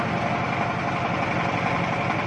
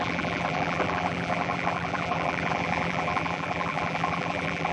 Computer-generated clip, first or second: second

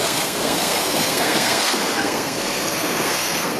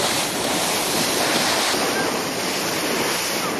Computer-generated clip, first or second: first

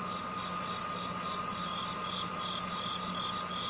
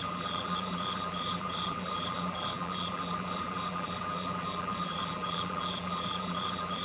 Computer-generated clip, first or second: second